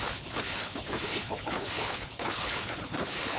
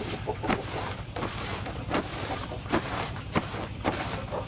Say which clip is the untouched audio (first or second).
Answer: second